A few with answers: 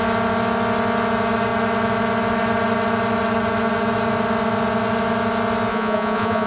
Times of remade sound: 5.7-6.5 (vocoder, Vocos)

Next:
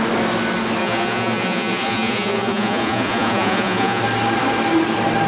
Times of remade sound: 0.8-4.0 (vocoder, Vocos)

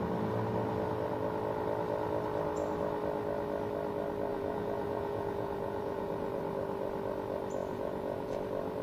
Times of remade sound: 4.3-6.4 (vocoder, Vocos); 7.6-8.4

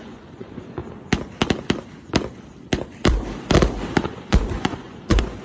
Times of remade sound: 0.0-0.8 (vocoder, Vocos); 4.0-5.4

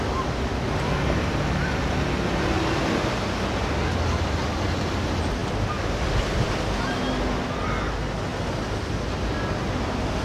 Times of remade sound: none

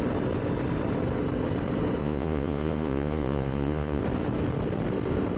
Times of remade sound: 2.0-4.0 (vocoder, Vocos)